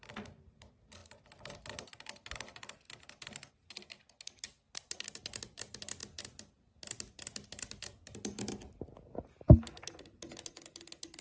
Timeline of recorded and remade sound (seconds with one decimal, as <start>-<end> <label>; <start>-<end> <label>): 0.0-11.2 recorded